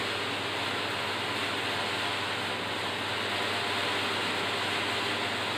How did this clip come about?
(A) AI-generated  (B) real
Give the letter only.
B